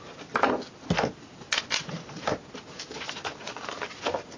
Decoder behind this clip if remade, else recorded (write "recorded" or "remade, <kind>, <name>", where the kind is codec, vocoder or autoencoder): recorded